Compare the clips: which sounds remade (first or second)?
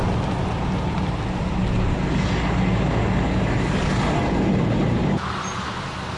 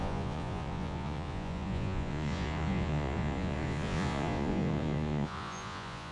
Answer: second